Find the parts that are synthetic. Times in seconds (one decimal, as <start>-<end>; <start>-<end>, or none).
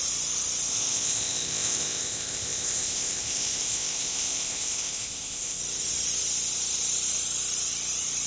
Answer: 0.7-5.6